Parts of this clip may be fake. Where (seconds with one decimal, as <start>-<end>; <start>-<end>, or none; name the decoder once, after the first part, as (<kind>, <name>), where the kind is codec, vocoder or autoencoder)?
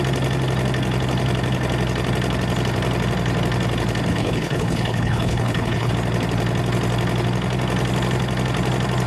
4.1-5.9 (codec, HILCodec)